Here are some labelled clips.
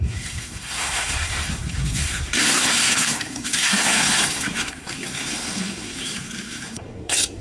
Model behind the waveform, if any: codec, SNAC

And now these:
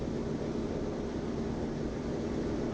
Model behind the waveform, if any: none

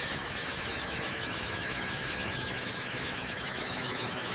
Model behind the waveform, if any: autoencoder, DAC-VAE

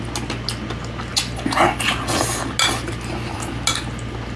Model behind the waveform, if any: none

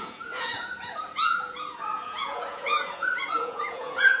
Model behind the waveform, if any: vocoder, Vocos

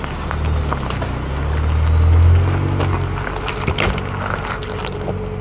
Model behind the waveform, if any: none